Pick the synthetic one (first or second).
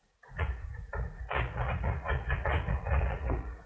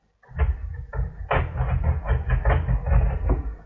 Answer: first